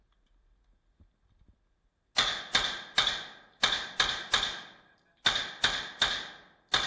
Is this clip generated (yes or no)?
no